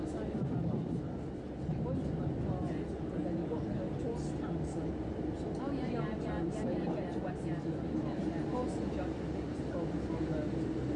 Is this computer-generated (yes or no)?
no